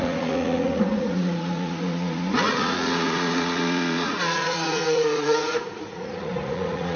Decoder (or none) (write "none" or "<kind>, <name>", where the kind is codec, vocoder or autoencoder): vocoder, Vocos